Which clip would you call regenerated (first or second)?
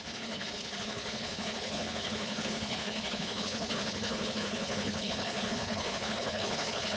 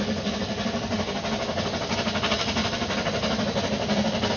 first